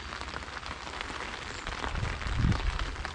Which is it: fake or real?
real